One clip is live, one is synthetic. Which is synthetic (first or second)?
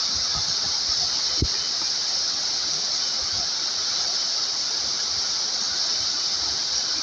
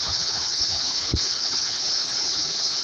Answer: second